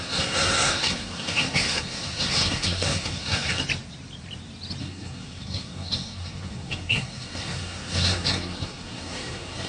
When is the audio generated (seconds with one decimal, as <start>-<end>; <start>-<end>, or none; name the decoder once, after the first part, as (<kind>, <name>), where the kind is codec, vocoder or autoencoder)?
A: 0.0-3.6 (codec, SNAC); 4.8-9.7